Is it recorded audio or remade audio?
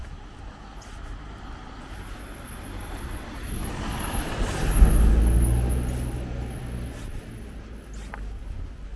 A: recorded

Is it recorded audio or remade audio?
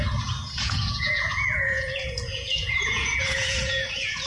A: remade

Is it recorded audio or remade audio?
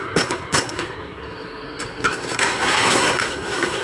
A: remade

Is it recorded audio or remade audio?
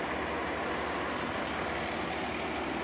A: recorded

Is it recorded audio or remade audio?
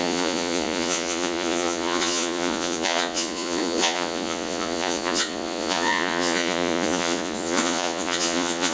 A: remade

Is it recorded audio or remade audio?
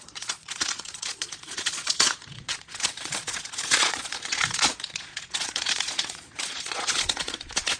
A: remade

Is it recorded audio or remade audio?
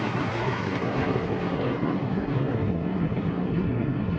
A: remade